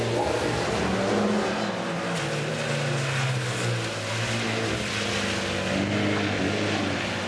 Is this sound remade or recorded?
recorded